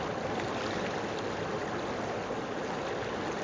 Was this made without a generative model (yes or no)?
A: yes